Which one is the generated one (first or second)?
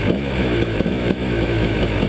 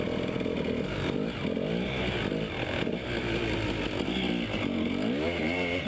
first